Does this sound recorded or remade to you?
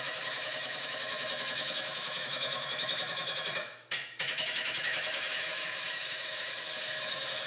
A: remade